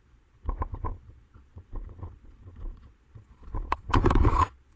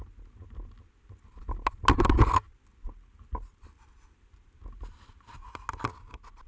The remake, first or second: first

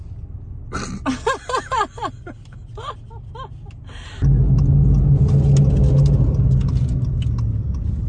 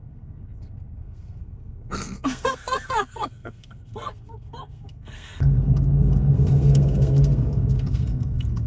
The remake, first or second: second